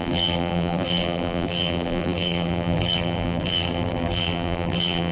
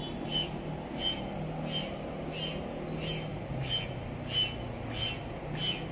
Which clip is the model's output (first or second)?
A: first